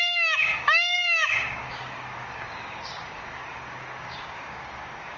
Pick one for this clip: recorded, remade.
remade